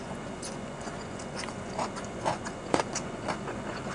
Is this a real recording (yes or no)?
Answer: no